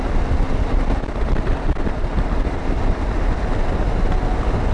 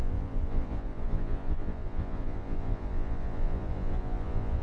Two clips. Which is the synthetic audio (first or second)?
second